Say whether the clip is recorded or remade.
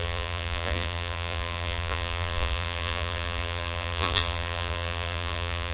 remade